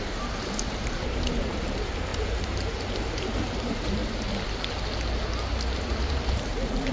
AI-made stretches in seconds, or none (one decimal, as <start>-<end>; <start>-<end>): 0.0-4.0; 6.1-6.9